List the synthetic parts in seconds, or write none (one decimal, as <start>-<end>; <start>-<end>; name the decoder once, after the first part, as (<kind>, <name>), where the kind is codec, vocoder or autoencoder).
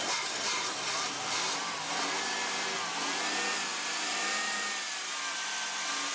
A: 3.7-5.1 (vocoder, BigVGAN v2)